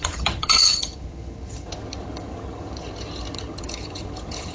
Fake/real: fake